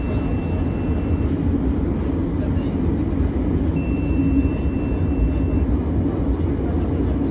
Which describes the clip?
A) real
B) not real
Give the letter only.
A